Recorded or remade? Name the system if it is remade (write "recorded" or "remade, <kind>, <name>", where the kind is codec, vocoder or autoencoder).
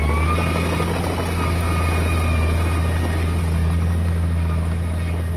recorded